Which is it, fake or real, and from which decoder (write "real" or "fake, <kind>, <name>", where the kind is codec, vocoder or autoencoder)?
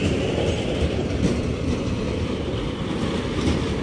real